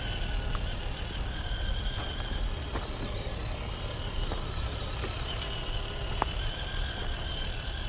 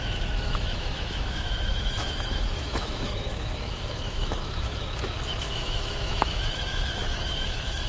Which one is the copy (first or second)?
second